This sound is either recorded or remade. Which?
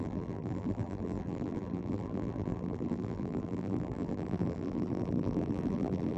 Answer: remade